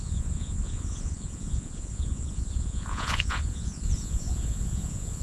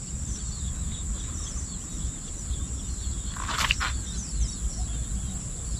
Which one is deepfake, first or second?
first